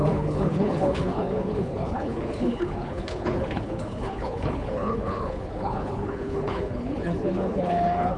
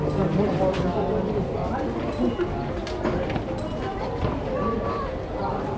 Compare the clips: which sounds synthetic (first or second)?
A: first